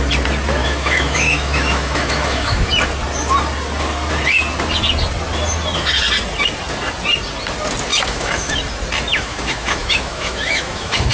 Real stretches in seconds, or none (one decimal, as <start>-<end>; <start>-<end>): 0.0-0.6; 2.7-7.9; 8.5-9.1